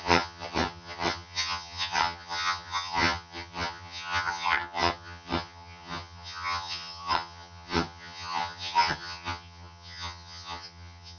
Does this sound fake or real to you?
fake